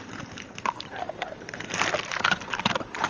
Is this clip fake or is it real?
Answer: fake